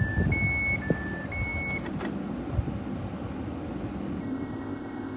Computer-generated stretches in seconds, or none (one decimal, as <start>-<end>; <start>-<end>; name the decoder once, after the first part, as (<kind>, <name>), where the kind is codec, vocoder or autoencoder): 4.2-5.2 (codec, ZipCodec)

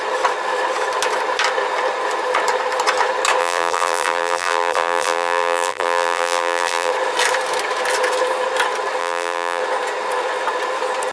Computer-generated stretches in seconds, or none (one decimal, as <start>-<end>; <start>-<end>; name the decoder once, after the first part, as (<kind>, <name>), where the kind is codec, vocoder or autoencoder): 3.4-6.9 (vocoder, BigVGAN v2); 9.0-9.6

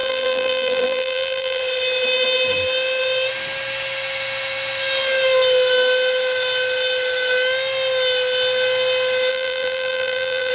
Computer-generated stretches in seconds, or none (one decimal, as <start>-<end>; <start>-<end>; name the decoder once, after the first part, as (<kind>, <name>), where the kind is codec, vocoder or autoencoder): 0.0-1.6 (vocoder, BigVGAN v2); 9.3-10.5

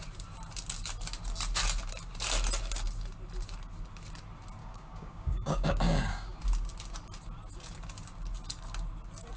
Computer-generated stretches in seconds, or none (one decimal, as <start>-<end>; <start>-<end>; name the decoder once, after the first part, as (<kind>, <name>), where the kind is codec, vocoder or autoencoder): 4.6-6.4 (codec, DAC)